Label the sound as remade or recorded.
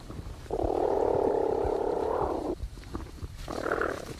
remade